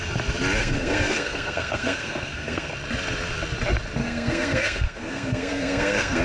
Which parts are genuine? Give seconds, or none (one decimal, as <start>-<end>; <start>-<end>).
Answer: 0.0-0.6; 2.7-4.0